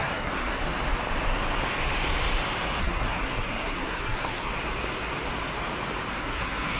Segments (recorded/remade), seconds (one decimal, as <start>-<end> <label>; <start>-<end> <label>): 0.0-0.6 remade; 0.6-2.8 recorded; 2.8-4.5 remade; 4.5-6.1 recorded; 6.1-6.8 remade